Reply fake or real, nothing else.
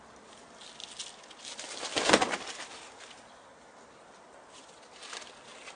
real